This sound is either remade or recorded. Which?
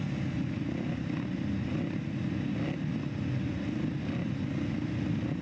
recorded